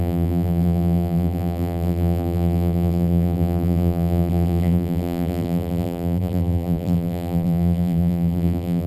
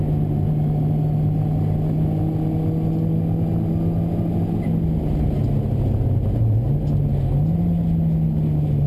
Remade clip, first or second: first